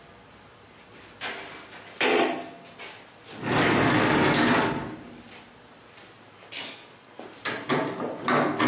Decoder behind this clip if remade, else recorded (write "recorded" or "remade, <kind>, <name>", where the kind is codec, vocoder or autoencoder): recorded